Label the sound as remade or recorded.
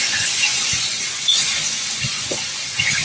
remade